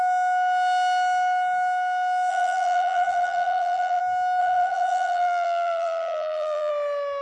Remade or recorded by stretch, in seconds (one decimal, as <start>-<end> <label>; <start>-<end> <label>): 0.0-2.3 recorded; 2.3-4.0 remade; 4.0-4.4 recorded; 4.4-6.7 remade; 6.7-7.2 recorded